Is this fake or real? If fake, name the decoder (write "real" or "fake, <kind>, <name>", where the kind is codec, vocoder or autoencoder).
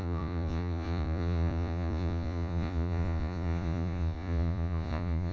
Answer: fake, vocoder, Vocos